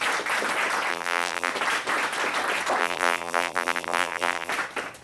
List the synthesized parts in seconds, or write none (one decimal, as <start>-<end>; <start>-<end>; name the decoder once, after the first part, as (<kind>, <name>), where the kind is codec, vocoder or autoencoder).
0.9-1.5 (vocoder, BigVGAN v2); 2.8-4.5

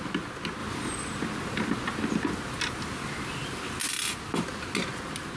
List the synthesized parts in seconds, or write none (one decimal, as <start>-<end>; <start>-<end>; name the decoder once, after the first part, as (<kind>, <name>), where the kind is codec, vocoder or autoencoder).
none

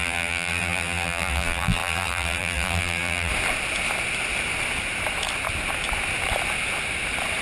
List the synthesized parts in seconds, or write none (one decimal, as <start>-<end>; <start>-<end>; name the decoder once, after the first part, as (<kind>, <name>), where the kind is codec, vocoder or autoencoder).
0.0-3.3 (vocoder, BigVGAN v2)

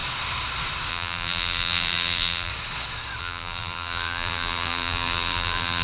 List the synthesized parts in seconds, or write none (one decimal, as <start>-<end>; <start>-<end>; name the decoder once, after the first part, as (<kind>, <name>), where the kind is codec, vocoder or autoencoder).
0.9-2.5 (vocoder, BigVGAN v2); 3.2-5.8

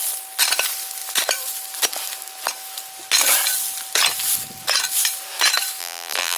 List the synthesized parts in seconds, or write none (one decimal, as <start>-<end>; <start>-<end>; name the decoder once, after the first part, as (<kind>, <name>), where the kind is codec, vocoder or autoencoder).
5.8-6.4 (vocoder, BigVGAN v2)

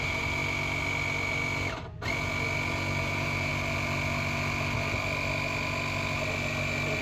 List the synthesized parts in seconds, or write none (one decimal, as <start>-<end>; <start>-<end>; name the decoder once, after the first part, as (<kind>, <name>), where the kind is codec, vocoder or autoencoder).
0.0-0.4 (vocoder, BigVGAN v2); 3.0-3.5

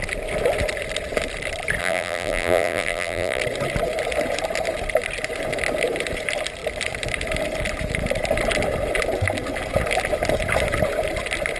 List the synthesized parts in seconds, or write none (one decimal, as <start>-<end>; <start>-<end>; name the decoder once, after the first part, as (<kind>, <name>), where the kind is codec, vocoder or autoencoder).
1.8-3.4 (vocoder, BigVGAN v2)